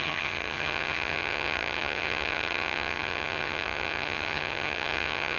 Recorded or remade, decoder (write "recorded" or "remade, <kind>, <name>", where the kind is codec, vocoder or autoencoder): remade, vocoder, HiFi-GAN